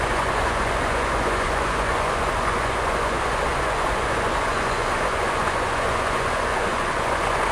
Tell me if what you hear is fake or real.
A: fake